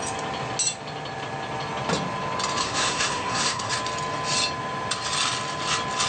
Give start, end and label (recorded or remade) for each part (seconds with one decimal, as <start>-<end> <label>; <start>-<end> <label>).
0.0-2.6 recorded; 2.6-3.7 remade; 3.7-6.1 recorded